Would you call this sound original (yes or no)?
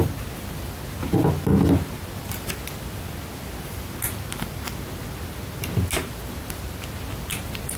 yes